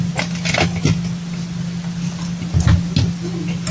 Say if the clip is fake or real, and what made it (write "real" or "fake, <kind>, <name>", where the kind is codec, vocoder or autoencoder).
real